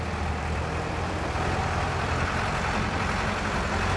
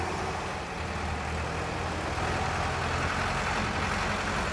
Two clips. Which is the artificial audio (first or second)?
first